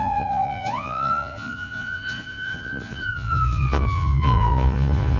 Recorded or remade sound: remade